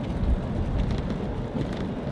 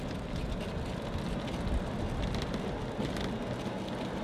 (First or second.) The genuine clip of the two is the second